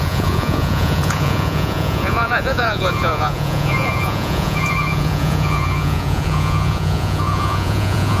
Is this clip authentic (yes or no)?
no